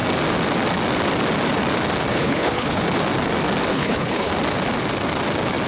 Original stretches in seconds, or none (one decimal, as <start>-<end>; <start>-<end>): 0.0-2.1; 2.8-3.7; 4.3-5.7